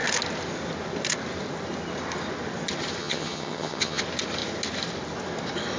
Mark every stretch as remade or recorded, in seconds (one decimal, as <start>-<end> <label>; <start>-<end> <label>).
0.0-3.0 recorded; 3.0-4.0 remade; 4.0-5.8 recorded

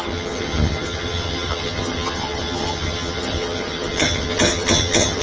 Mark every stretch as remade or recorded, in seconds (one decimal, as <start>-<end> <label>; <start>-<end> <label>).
0.0-5.2 remade

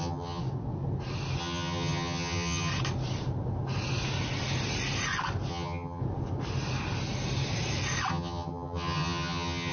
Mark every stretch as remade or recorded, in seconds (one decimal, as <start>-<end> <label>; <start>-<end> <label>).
0.0-0.4 remade; 0.4-1.4 recorded; 1.4-2.7 remade; 2.7-5.5 recorded; 5.5-6.0 remade; 6.0-8.1 recorded; 8.1-9.7 remade

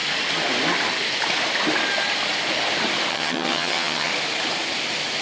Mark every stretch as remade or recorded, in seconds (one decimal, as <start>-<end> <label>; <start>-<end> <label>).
0.0-3.1 recorded; 3.1-4.1 remade; 4.1-5.2 recorded

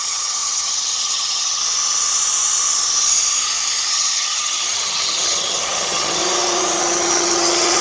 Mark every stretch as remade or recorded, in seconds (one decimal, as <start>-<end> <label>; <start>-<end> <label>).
0.0-1.6 remade; 1.6-3.9 recorded; 3.9-6.2 remade; 6.2-6.8 recorded; 6.8-7.8 remade